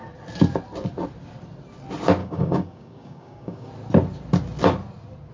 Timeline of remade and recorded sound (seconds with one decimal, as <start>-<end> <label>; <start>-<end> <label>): 0.0-2.2 recorded; 2.2-3.7 remade; 3.7-5.3 recorded